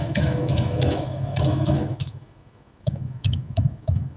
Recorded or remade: remade